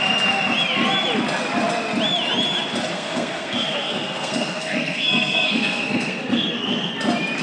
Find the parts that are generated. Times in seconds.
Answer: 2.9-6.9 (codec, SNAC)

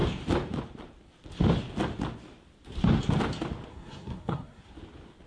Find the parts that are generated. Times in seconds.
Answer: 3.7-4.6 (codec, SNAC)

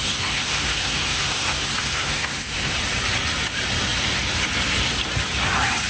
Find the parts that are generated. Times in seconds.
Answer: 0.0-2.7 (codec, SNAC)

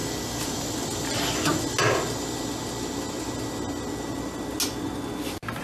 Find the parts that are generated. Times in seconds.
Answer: none

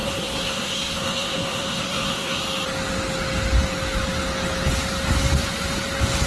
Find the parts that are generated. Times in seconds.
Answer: 0.0-2.4 (codec, SNAC)

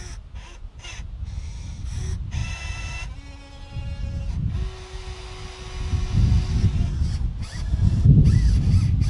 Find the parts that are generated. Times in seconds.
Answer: none

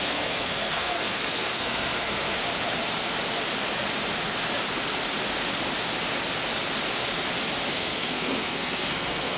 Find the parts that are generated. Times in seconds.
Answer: 0.0-2.4 (codec, SNAC); 7.7-9.4